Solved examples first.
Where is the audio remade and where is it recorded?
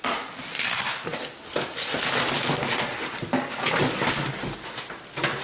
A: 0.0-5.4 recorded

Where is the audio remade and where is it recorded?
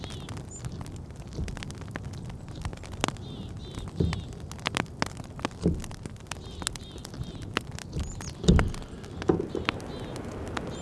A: 0.0-10.8 recorded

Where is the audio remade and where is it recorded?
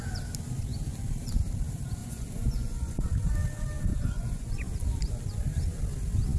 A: 0.0-2.0 recorded; 2.0-3.0 remade; 3.0-3.9 recorded; 3.9-4.5 remade; 4.5-6.4 recorded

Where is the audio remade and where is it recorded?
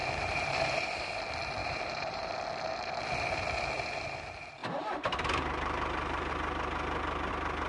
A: 0.0-1.1 remade; 1.1-1.6 recorded; 1.6-2.3 remade; 2.3-4.6 recorded; 4.6-6.3 remade; 6.3-7.7 recorded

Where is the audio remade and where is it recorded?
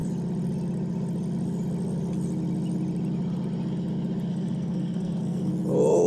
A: 0.0-4.3 recorded; 4.3-5.5 remade; 5.5-6.1 recorded